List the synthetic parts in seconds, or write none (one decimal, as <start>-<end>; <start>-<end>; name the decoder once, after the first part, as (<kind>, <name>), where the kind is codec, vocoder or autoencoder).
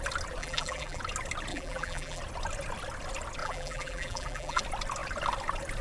0.4-1.0 (vocoder, BigVGAN v2); 1.5-2.2; 3.4-4.6